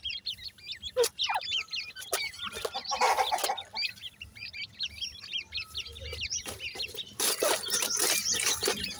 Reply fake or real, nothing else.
real